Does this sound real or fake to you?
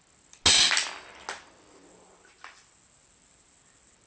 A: real